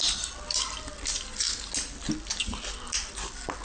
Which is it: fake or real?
real